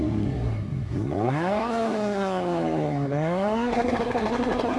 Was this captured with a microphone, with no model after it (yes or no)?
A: no